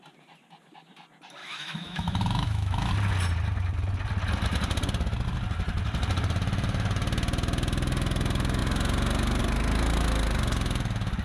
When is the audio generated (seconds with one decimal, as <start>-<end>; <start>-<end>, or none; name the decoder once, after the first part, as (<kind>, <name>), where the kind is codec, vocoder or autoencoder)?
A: 1.4-2.9 (autoencoder, DAC-VAE)

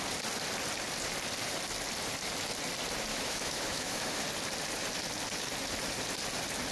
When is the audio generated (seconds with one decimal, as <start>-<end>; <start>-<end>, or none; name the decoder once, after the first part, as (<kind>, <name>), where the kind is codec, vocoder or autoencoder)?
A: 3.1-4.2 (autoencoder, DAC-VAE)